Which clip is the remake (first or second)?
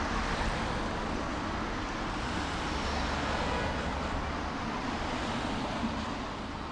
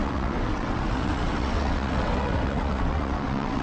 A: second